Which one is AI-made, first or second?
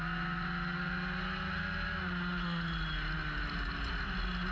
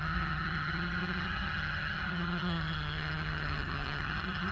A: second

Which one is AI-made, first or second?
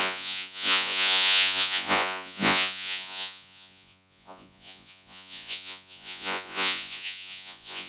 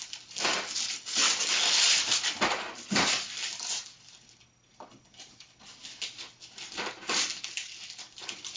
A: first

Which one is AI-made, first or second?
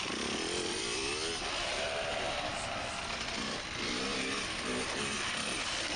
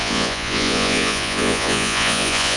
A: second